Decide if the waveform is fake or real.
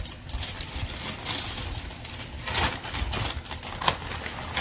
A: real